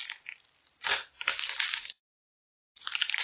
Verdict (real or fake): real